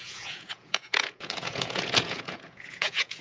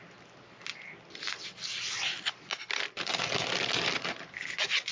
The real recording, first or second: second